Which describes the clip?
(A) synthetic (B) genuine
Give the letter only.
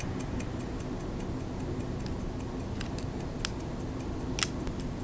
B